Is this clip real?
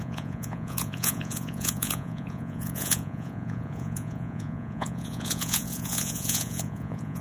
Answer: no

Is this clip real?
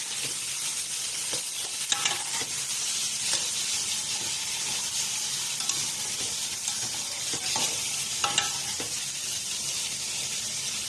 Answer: yes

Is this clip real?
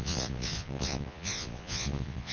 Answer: no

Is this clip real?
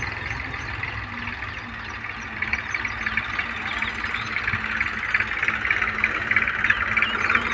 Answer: yes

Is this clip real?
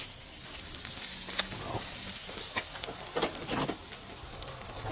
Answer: yes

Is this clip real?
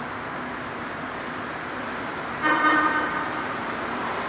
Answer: yes